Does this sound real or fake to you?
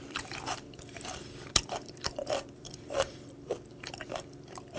fake